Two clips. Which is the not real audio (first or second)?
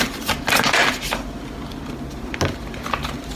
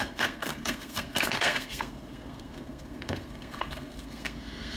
second